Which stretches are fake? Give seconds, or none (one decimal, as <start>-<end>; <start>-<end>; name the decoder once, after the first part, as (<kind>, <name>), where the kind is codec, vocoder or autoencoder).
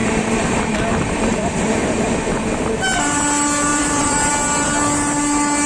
0.0-2.4 (vocoder, BigVGAN v2); 3.7-4.3